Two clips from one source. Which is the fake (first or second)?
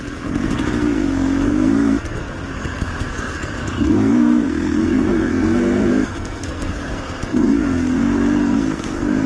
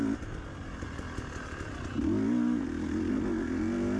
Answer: first